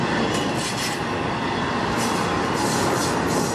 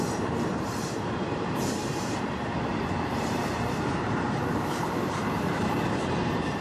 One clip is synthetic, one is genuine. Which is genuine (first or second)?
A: first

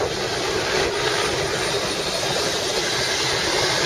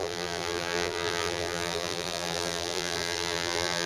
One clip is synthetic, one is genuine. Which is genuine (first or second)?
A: first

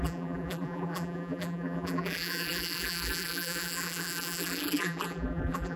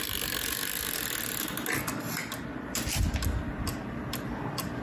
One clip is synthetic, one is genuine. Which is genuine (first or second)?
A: second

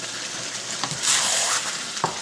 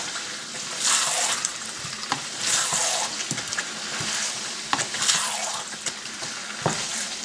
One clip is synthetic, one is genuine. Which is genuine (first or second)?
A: first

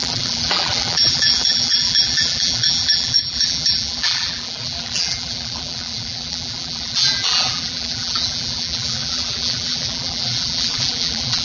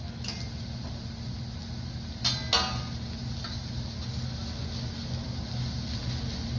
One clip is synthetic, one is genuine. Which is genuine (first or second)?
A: second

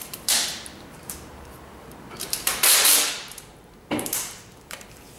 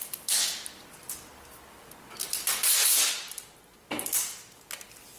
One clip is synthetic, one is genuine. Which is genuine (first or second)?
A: second